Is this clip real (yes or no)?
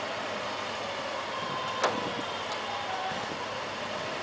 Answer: yes